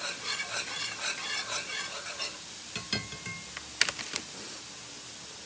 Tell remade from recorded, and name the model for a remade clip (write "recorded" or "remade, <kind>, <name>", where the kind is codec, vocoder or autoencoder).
recorded